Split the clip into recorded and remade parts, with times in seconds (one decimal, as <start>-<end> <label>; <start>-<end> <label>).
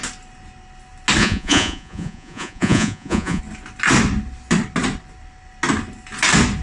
0.0-1.2 recorded; 1.2-3.4 remade; 3.4-6.6 recorded